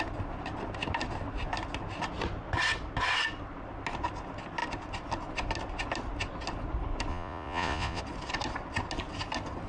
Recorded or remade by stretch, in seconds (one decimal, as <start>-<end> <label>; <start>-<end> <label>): 0.0-7.1 recorded; 7.1-8.0 remade; 8.0-9.7 recorded